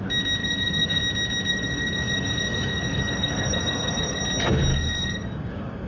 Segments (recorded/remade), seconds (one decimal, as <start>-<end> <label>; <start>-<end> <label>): 0.0-0.4 recorded; 0.4-1.0 remade; 1.0-1.5 recorded; 1.5-4.2 remade; 4.2-4.7 recorded; 4.7-5.9 remade

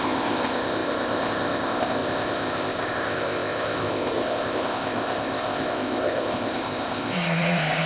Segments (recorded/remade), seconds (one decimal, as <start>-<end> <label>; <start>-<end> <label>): 0.0-7.9 remade